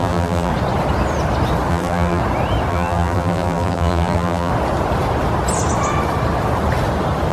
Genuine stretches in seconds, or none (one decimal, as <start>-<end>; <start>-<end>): 0.5-1.7; 2.2-2.7; 4.5-7.3